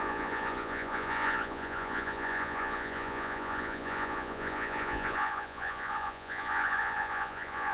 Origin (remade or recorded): remade